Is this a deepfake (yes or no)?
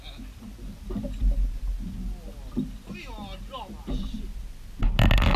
no